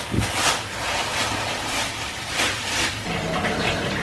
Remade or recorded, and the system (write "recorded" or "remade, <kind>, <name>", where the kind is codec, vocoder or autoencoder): recorded